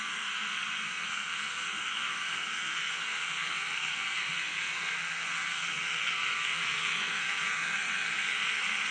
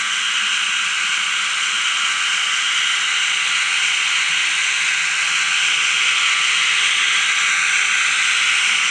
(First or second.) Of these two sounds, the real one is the second